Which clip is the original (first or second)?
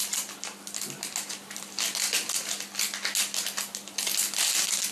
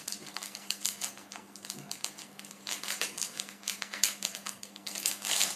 first